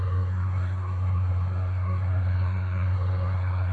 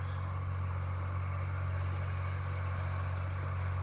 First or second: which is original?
second